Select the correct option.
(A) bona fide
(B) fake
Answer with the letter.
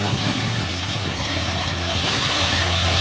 B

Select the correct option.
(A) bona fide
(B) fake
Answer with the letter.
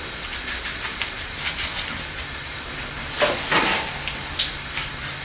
A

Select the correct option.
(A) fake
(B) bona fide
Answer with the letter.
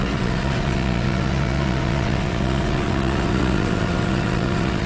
A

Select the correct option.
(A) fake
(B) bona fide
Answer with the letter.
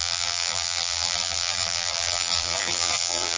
A